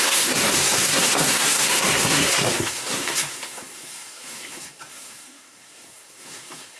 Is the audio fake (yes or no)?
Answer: yes